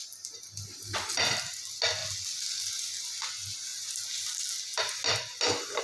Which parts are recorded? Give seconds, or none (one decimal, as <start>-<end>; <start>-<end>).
0.0-5.8